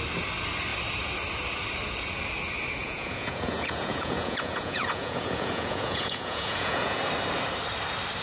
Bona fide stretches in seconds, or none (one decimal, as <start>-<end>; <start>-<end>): 0.0-2.8; 7.0-8.2